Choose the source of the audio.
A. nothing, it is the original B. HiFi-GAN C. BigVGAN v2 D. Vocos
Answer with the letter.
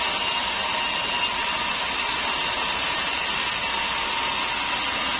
A